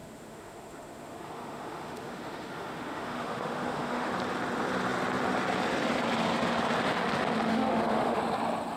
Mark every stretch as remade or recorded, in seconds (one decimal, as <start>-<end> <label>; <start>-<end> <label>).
0.0-4.1 remade; 4.1-7.5 recorded; 7.5-8.2 remade; 8.2-8.8 recorded